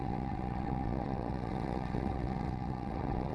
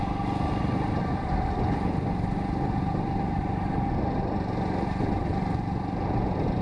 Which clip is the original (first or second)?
second